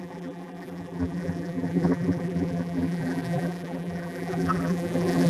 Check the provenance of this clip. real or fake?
fake